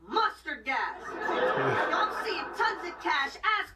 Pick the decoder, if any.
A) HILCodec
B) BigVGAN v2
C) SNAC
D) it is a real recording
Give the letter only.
D